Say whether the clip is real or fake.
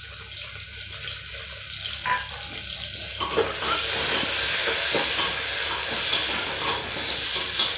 real